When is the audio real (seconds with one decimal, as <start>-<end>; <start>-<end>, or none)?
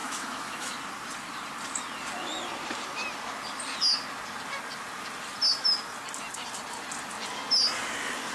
0.7-8.3